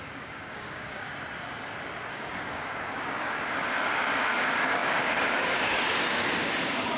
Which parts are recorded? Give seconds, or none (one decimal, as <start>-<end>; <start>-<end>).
1.1-2.1